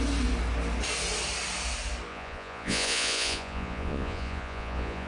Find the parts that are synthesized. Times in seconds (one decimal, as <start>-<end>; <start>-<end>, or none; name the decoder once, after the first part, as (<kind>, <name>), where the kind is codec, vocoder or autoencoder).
2.1-5.1 (vocoder, Vocos)